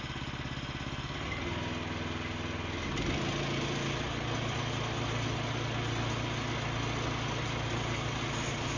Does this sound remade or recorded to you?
recorded